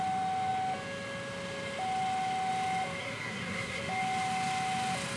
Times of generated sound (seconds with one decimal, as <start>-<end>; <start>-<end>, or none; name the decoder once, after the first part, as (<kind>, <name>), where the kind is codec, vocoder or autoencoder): 3.0-3.8 (codec, SNAC)